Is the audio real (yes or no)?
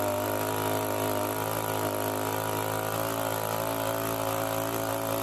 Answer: yes